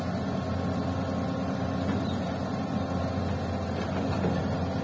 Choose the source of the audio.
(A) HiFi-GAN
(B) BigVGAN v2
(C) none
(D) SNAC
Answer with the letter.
C